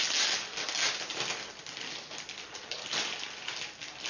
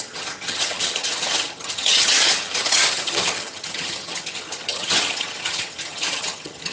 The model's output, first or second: second